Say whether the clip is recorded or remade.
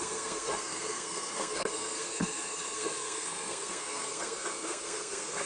remade